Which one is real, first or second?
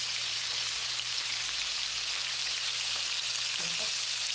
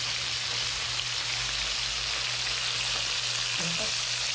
second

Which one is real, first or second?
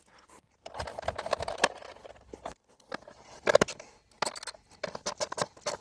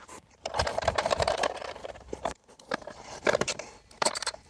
first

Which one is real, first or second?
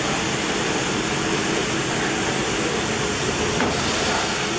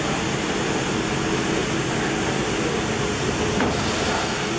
second